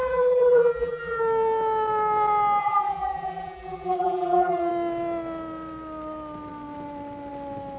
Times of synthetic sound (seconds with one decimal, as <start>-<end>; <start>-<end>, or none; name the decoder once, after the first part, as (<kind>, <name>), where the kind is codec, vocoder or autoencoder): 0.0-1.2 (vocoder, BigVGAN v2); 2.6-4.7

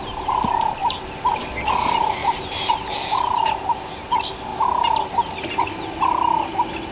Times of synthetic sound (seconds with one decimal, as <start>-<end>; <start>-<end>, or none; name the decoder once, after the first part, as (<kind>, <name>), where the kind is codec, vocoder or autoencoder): 0.8-1.4 (vocoder, BigVGAN v2); 2.2-2.7

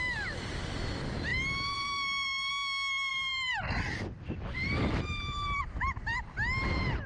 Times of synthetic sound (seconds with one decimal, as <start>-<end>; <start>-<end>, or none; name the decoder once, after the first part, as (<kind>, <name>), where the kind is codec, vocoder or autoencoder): 1.3-2.5 (vocoder, BigVGAN v2); 3.1-5.6

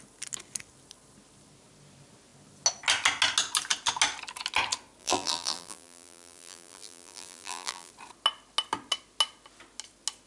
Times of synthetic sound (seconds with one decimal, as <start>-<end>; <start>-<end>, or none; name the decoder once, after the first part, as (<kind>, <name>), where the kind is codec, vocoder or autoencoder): 5.0-7.9 (vocoder, BigVGAN v2)

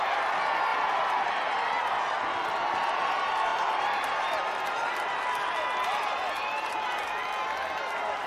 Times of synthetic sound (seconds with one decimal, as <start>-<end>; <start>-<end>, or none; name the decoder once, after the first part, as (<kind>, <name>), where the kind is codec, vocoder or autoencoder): 3.5-4.7 (vocoder, BigVGAN v2)